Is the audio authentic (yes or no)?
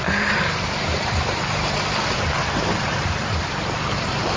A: no